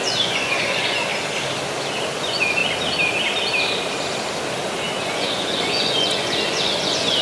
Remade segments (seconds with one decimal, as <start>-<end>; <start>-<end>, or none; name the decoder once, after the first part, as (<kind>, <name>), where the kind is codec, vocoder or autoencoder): 0.0-1.1 (vocoder, Vocos); 2.1-2.6; 5.0-7.2